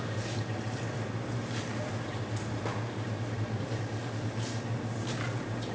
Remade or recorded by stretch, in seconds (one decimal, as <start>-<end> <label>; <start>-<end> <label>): 0.0-5.7 recorded